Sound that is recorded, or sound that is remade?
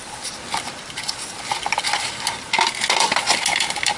recorded